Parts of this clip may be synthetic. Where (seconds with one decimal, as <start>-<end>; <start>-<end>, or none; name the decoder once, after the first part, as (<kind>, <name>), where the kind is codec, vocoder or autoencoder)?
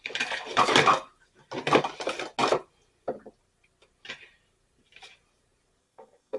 5.8-6.4 (codec, SNAC)